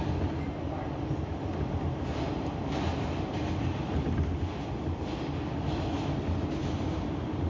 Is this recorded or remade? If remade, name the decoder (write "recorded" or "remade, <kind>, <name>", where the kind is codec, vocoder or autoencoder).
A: recorded